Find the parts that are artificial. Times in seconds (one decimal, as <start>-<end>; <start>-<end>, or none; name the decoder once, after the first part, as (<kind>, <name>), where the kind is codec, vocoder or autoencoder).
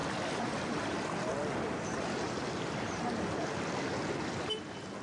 0.0-3.0 (vocoder, BigVGAN v2)